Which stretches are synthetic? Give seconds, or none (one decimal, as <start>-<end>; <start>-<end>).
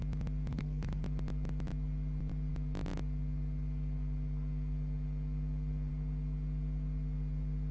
0.5-1.0